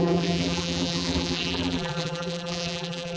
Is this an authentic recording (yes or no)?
no